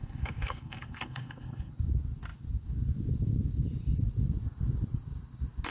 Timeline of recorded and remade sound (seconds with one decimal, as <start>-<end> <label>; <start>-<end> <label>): 0.0-1.7 remade; 1.7-5.7 recorded